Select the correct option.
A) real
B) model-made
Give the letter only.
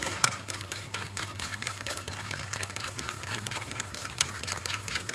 B